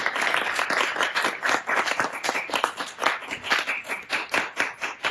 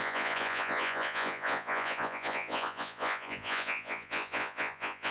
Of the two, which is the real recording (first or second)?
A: first